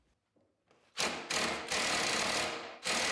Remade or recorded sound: recorded